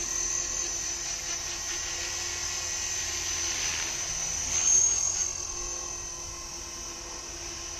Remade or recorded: recorded